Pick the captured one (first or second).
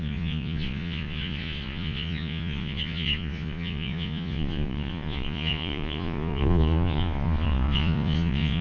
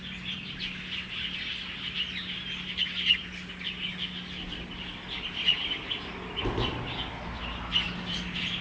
second